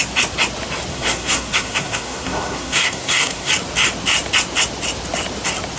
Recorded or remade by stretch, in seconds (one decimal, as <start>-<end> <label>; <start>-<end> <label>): 0.0-0.9 recorded; 0.9-3.5 remade; 3.5-5.8 recorded